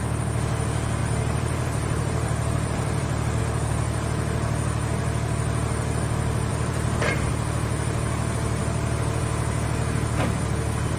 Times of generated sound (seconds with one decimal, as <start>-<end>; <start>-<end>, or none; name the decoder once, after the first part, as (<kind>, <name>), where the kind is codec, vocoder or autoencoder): 1.0-3.4 (vocoder, BigVGAN v2); 6.5-7.3